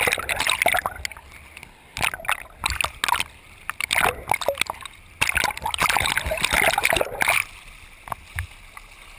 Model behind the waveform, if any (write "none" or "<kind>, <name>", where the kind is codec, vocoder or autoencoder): none